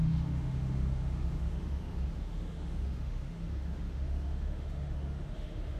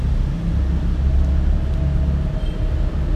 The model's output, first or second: first